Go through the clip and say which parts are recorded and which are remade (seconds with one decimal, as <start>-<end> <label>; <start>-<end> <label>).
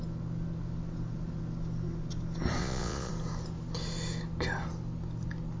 0.0-2.6 recorded; 2.6-3.1 remade; 3.1-5.6 recorded